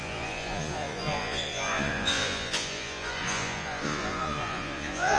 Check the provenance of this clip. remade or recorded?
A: remade